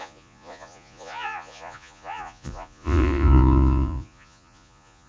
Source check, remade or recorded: remade